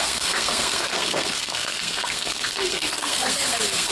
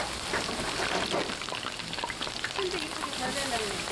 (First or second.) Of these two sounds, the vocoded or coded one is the first